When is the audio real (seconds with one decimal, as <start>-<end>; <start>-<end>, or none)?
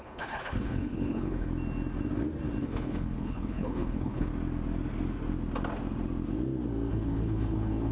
1.5-2.6; 4.3-6.9